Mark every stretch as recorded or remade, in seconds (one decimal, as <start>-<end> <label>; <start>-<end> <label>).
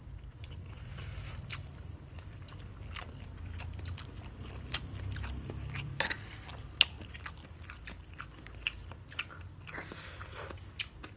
0.0-5.9 remade; 5.9-7.3 recorded; 7.3-11.2 remade